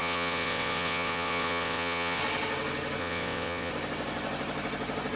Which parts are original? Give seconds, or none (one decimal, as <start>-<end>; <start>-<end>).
2.2-3.0; 3.7-5.2